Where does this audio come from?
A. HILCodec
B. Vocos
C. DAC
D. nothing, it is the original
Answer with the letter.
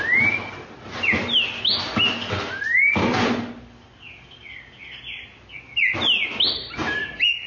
D